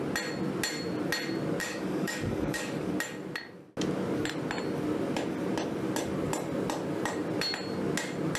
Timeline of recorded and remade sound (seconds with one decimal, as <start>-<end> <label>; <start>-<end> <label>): 0.0-1.6 recorded; 1.6-2.9 remade; 2.9-8.4 recorded